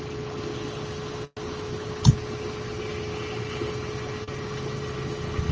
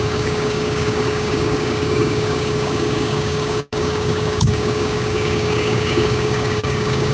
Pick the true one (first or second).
first